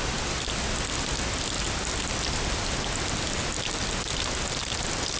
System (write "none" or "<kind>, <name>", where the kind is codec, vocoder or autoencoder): none